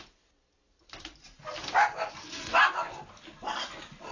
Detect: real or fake real